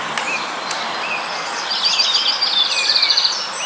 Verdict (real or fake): real